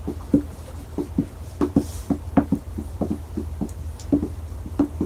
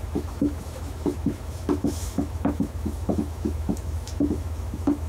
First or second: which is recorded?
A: first